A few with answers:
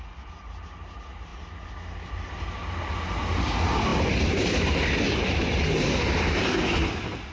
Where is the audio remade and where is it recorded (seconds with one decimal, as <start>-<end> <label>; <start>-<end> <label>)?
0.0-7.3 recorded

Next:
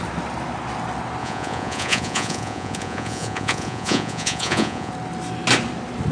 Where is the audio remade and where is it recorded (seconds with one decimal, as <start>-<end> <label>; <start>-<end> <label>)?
0.0-1.2 recorded; 1.2-4.9 remade; 4.9-6.1 recorded

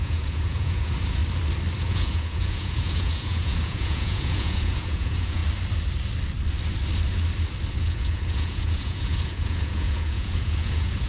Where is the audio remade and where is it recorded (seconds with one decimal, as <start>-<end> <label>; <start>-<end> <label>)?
0.0-1.2 remade; 1.2-1.8 recorded; 1.8-5.4 remade; 5.4-7.8 recorded; 7.8-11.1 remade

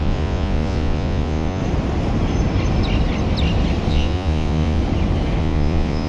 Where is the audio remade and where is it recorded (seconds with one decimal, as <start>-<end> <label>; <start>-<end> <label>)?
0.0-1.6 remade; 1.6-3.9 recorded; 3.9-4.8 remade; 4.8-5.4 recorded; 5.4-6.1 remade

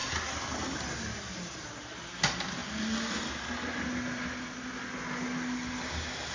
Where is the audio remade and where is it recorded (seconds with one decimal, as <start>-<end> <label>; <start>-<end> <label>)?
0.0-6.3 recorded

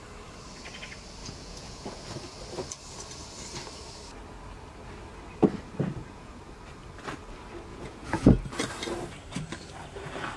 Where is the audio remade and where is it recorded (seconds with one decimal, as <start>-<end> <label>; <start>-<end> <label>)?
0.0-1.2 recorded; 1.2-2.0 remade; 2.0-6.0 recorded; 6.0-6.5 remade; 6.5-7.7 recorded; 7.7-8.4 remade; 8.4-10.4 recorded